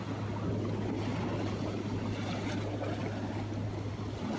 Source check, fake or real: real